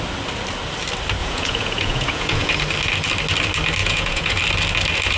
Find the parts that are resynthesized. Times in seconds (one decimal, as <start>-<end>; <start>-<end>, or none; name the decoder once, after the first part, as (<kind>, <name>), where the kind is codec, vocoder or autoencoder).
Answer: 1.2-2.5 (vocoder, Vocos); 3.8-4.4